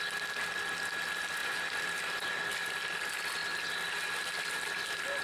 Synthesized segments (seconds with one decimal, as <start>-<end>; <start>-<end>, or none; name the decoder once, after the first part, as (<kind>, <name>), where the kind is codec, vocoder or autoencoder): 1.4-2.4 (vocoder, BigVGAN v2)